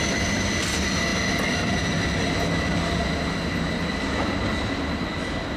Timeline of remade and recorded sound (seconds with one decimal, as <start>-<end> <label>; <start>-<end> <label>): 0.0-5.6 recorded